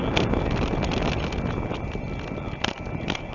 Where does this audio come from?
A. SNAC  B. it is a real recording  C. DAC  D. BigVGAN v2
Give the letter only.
B